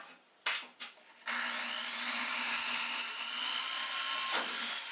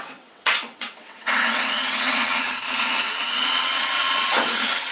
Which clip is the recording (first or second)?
first